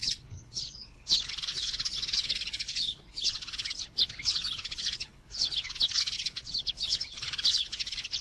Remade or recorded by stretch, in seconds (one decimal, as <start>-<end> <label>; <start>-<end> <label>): 0.0-8.2 remade